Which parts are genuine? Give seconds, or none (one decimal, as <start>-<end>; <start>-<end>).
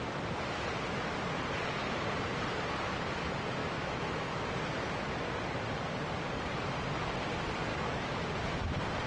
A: 0.0-3.6; 4.6-7.7; 8.4-9.1